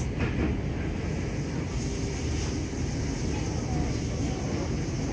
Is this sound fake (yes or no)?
no